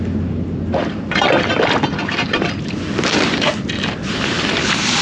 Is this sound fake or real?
real